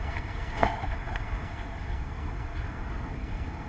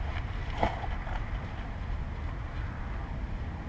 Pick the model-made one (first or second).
first